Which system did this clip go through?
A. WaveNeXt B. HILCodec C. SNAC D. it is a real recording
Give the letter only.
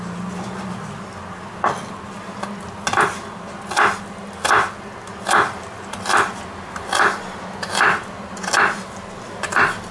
D